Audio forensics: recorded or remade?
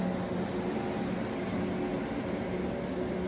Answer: recorded